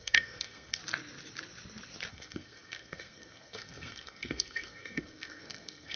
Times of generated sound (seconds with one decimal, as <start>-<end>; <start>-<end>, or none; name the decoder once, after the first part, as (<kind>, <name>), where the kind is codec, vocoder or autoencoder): 0.0-0.8 (codec, SNAC); 2.1-6.0